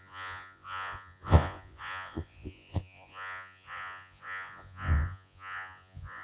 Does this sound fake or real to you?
fake